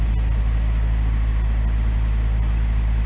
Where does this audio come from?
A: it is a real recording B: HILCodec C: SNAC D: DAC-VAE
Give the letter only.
A